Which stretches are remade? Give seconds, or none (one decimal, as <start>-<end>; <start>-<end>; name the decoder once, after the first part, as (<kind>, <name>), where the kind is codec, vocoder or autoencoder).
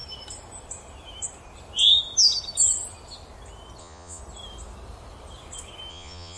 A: 3.8-4.2 (vocoder, Vocos); 5.9-6.4